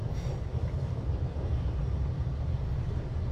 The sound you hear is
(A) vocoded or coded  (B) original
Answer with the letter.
B